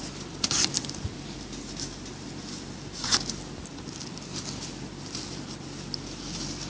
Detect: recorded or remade recorded